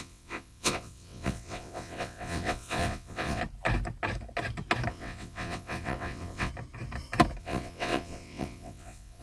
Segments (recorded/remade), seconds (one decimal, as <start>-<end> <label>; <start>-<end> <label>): 0.0-3.4 remade; 3.4-4.9 recorded; 4.9-6.5 remade; 6.5-7.4 recorded; 7.4-9.2 remade